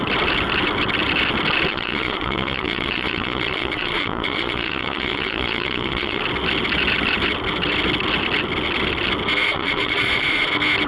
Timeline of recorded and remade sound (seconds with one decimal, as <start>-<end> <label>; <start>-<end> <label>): 0.0-1.7 recorded; 1.7-6.2 remade; 6.2-9.4 recorded; 9.4-10.5 remade; 10.5-10.9 recorded